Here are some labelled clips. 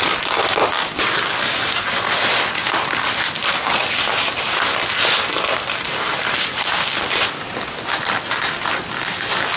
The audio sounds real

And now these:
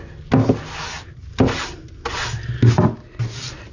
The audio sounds real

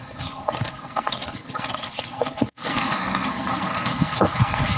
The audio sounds fake